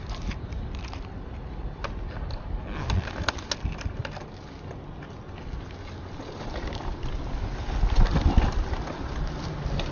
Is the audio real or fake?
real